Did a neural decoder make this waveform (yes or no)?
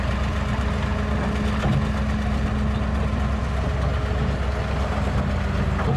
no